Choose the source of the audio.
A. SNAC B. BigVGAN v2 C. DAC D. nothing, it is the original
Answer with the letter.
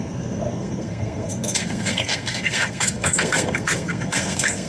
A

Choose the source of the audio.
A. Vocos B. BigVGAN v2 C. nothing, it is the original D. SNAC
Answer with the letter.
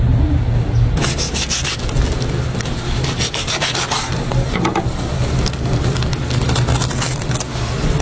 C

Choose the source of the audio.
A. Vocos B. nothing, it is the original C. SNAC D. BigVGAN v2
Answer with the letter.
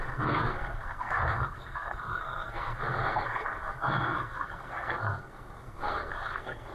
C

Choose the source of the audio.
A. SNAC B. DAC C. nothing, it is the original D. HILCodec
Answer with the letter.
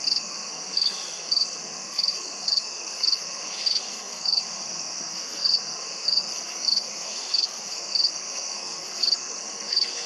A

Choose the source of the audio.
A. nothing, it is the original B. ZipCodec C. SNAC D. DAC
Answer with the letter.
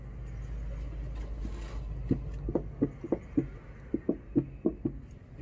A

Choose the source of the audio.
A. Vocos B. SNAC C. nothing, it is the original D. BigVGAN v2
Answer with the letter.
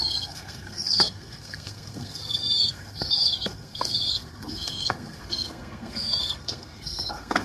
B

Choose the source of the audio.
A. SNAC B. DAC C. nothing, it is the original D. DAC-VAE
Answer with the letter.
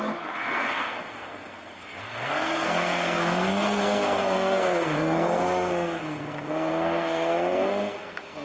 A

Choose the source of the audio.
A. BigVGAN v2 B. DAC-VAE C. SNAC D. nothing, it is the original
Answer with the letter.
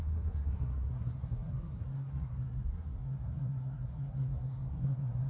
C